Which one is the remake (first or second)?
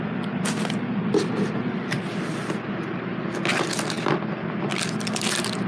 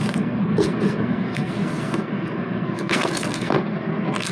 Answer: second